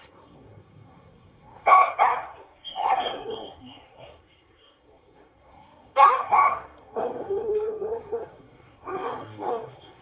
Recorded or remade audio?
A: remade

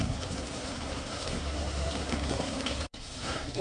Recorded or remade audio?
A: remade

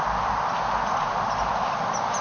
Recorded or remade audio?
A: recorded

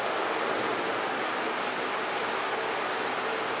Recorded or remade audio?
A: recorded